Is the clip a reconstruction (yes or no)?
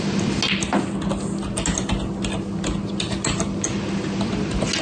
no